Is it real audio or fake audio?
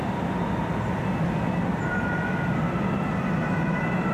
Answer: real